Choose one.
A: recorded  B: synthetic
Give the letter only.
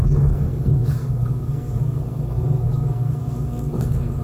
B